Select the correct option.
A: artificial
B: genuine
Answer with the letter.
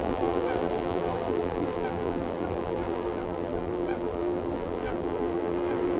A